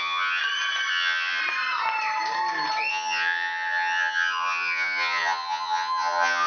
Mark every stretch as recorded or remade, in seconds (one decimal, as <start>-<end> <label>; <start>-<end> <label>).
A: 0.0-0.4 remade; 0.4-0.9 recorded; 0.9-1.4 remade; 1.4-2.9 recorded; 2.9-6.5 remade